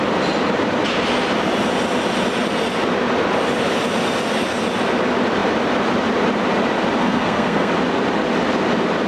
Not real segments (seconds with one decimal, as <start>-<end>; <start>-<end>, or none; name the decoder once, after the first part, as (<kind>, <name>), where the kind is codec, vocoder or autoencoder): 7.0-7.7 (codec, SNAC)